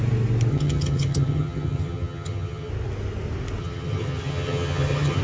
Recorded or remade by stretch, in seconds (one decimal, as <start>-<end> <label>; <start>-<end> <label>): 0.0-0.5 recorded; 0.5-2.7 remade; 2.7-3.6 recorded; 3.6-5.2 remade